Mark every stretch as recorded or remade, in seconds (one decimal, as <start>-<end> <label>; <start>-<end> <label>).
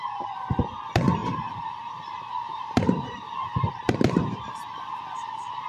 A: 0.0-1.2 recorded; 1.2-4.6 remade; 4.6-5.7 recorded